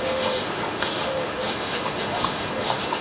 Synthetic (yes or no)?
yes